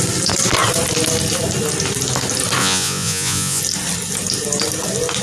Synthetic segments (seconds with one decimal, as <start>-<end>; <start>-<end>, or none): 2.6-3.6